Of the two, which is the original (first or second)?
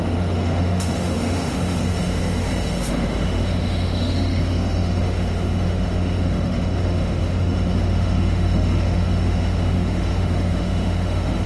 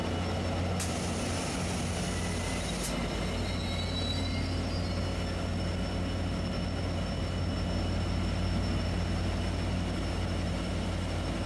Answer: second